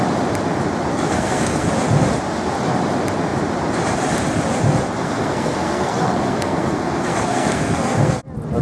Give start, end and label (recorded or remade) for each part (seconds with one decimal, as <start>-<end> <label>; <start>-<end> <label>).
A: 0.0-0.9 recorded; 0.9-1.7 remade; 1.7-5.0 recorded; 5.0-8.2 remade; 8.2-8.6 recorded